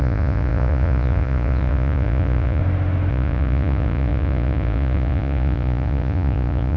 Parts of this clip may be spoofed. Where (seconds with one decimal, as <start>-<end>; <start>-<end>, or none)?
0.0-2.6; 3.1-6.8